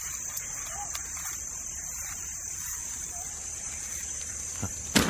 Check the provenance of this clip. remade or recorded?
recorded